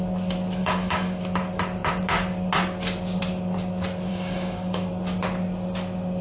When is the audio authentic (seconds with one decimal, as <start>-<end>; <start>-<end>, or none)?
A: 0.0-0.6; 1.2-4.1; 4.9-6.2